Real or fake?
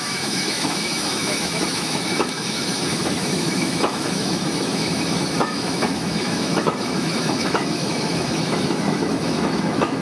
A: fake